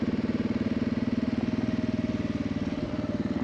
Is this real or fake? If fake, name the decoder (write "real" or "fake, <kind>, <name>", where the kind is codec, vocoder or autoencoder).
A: real